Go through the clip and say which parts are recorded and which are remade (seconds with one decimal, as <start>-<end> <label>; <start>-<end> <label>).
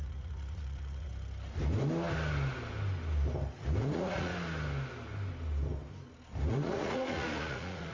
0.0-1.1 remade; 1.1-3.8 recorded; 3.8-4.3 remade; 4.3-6.5 recorded; 6.5-7.9 remade